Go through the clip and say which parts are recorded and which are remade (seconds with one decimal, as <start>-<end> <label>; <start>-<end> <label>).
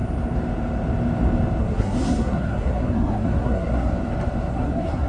0.0-1.6 recorded; 1.6-3.9 remade; 3.9-4.5 recorded; 4.5-5.1 remade